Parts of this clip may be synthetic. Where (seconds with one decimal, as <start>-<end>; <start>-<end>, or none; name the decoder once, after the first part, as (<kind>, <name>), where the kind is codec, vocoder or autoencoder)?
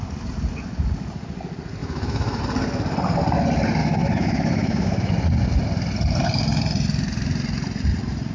1.8-2.4 (autoencoder, DAC-VAE); 3.8-5.1